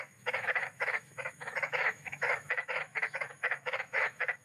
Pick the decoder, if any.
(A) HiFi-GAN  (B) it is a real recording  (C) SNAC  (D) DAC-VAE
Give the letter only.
D